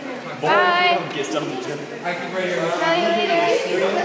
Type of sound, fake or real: real